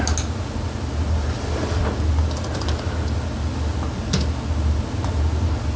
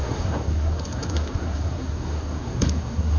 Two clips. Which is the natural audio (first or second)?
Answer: first